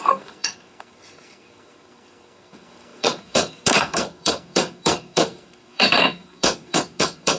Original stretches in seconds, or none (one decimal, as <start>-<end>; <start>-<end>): none